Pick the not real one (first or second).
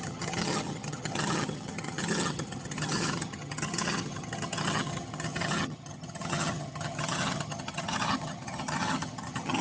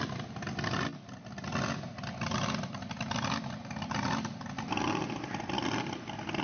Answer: first